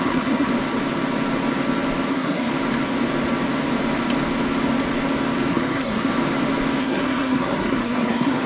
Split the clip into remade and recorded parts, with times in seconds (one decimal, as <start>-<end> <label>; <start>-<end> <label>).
0.0-0.5 remade; 0.5-2.1 recorded; 2.1-2.5 remade; 2.5-5.5 recorded; 5.5-6.1 remade; 6.1-6.8 recorded; 6.8-8.5 remade